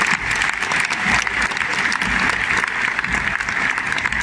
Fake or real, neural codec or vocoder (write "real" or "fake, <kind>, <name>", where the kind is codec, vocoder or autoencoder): real